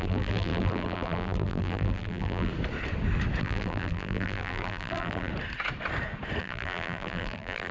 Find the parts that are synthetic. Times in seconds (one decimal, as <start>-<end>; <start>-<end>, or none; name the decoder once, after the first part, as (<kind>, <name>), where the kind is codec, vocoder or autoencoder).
0.0-2.5 (vocoder, BigVGAN v2); 3.4-5.3; 6.4-7.7